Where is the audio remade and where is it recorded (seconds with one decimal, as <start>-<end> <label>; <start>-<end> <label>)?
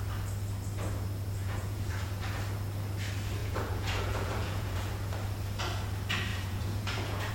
0.0-1.4 recorded; 1.4-2.4 remade; 2.4-3.4 recorded; 3.4-4.9 remade; 4.9-6.3 recorded; 6.3-7.3 remade